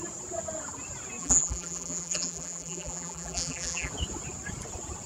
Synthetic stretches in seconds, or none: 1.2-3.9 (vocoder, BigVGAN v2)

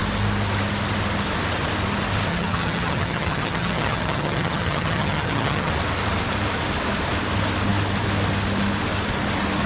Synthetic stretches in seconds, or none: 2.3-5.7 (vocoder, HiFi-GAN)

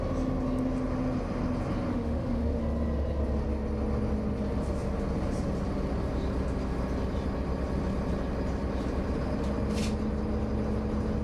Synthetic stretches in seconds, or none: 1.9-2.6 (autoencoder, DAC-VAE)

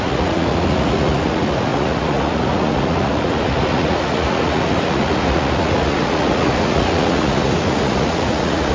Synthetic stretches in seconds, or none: 0.0-8.7 (vocoder, Vocos)